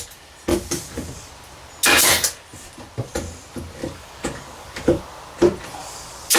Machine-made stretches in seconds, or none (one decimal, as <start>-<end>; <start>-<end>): 0.5-1.3; 3.8-5.0; 5.8-6.4